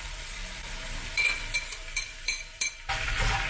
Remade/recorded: recorded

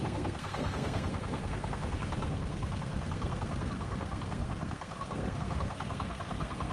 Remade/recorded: remade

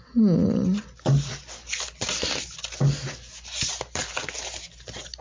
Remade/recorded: recorded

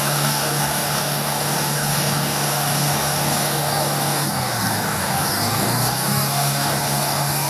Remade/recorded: remade